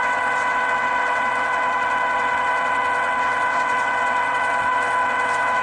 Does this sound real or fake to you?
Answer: fake